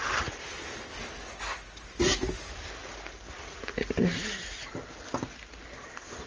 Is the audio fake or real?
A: real